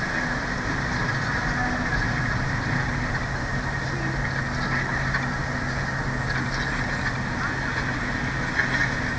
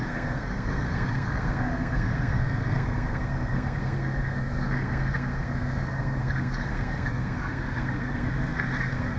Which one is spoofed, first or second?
second